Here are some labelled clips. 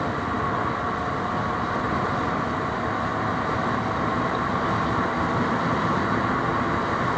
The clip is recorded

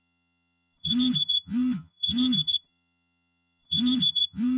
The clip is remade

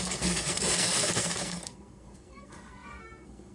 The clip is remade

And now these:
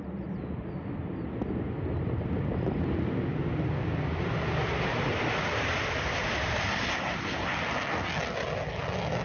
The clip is recorded